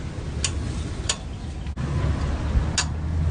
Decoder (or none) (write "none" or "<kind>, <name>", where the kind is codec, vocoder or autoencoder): none